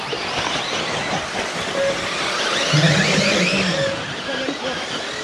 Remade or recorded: recorded